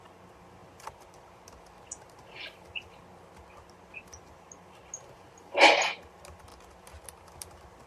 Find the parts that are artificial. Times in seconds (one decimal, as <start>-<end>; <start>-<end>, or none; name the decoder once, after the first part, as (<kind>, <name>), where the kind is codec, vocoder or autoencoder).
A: none